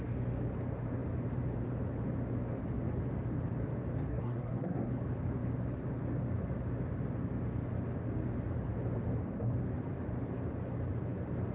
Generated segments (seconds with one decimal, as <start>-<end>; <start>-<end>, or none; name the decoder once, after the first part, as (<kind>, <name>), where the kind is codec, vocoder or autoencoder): 4.1-4.9 (codec, SNAC)